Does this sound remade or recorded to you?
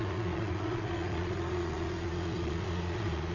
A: remade